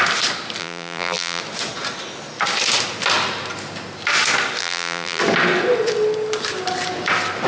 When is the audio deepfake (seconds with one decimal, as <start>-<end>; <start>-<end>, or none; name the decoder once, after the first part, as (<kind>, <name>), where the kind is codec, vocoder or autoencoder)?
0.6-1.4 (vocoder, BigVGAN v2); 4.6-5.2

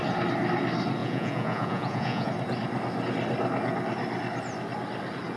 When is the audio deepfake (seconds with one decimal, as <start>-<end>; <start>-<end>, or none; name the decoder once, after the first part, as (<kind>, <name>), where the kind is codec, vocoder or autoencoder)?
1.0-2.3 (vocoder, Vocos)